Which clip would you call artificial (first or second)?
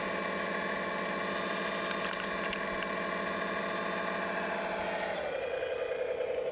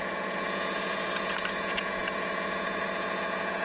second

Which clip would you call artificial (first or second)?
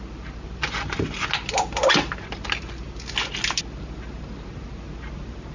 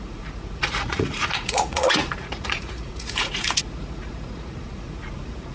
second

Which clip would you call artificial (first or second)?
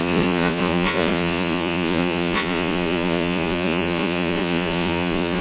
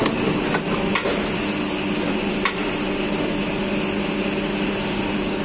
first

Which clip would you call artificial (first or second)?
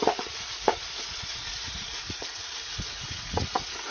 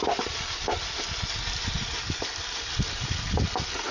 first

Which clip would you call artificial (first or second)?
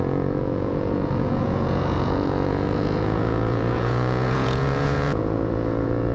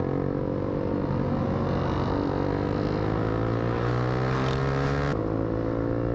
first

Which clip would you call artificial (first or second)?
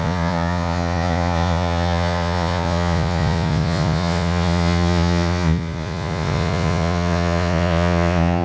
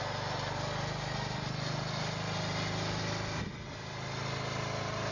first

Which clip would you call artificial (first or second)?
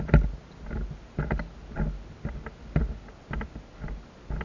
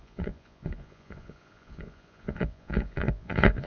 second